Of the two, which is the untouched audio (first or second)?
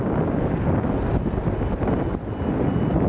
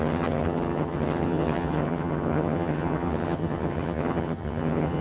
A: first